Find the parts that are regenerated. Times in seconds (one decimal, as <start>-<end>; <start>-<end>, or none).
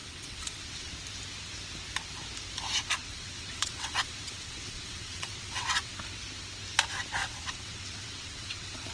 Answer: 0.0-0.9; 3.0-5.9; 7.2-8.9